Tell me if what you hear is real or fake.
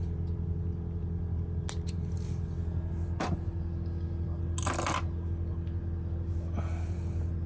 real